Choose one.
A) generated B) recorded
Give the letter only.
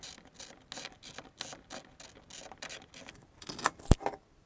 B